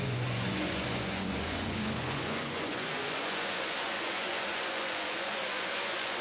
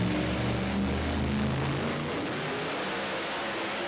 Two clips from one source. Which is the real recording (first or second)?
second